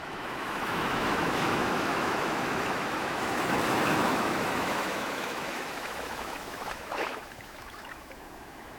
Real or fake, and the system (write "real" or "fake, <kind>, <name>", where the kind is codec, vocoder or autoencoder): fake, autoencoder, DAC-VAE